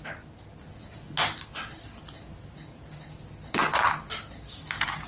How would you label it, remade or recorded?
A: recorded